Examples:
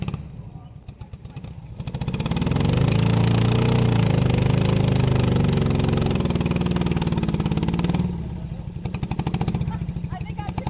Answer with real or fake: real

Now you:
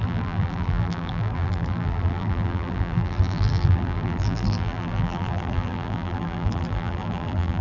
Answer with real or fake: fake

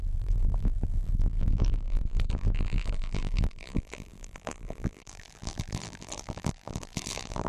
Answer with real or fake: fake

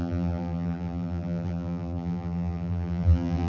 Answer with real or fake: fake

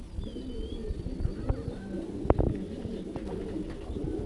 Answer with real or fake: real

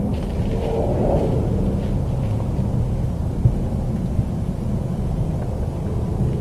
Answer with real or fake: real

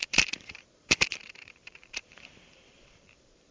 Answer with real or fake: fake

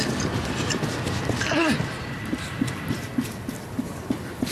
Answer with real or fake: fake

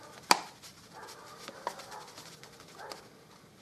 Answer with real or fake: real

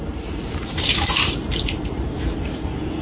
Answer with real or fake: fake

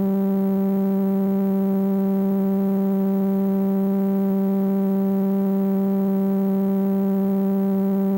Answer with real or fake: real